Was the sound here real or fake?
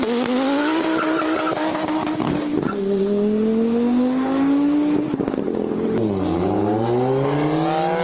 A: real